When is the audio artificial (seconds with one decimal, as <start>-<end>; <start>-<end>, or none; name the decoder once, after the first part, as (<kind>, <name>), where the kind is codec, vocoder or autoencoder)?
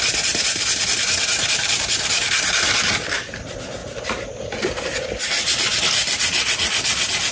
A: 1.3-1.8 (vocoder, BigVGAN v2); 3.8-5.8